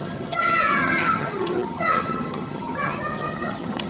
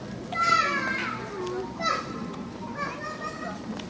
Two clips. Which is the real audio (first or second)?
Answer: second